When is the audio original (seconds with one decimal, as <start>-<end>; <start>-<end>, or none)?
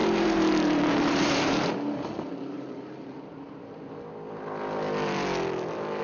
3.6-6.0